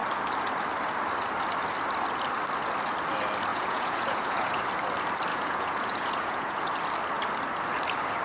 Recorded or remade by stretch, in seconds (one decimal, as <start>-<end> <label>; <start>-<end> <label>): 0.0-3.5 recorded; 3.5-4.6 remade; 4.6-5.3 recorded; 5.3-6.6 remade; 6.6-8.2 recorded